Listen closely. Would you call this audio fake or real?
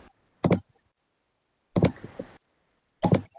real